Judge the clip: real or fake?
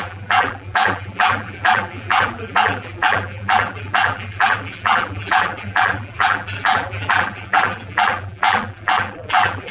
fake